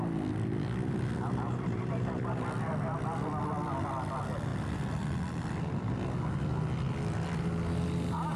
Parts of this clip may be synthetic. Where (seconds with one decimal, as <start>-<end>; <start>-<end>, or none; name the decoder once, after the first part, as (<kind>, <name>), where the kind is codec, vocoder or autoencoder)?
none